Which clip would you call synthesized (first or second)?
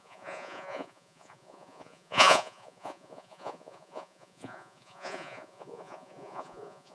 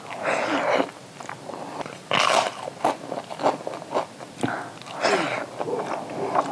first